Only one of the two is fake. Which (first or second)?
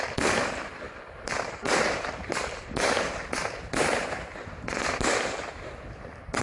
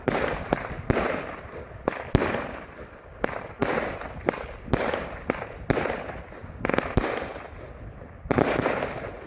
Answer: first